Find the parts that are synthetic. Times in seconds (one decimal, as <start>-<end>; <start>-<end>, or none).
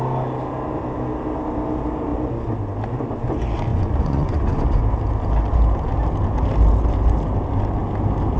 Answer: 3.7-4.8